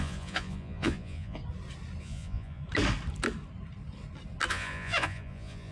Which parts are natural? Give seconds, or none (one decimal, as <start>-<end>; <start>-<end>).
1.4-2.0; 2.6-4.5